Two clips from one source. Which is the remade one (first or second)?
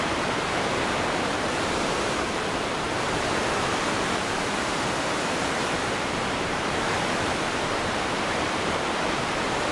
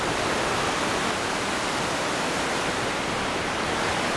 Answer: first